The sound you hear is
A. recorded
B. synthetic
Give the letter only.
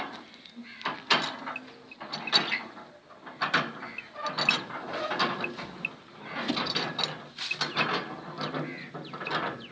A